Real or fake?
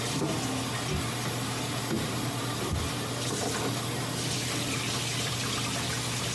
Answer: real